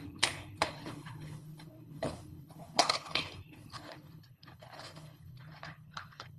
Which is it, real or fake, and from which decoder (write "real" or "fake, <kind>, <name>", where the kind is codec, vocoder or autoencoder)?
fake, codec, HILCodec